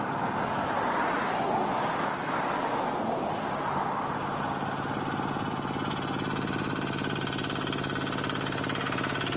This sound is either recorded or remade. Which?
recorded